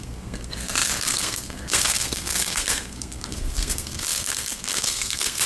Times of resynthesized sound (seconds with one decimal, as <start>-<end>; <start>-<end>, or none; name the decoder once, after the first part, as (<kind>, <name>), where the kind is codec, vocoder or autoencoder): 0.0-5.5 (codec, SNAC)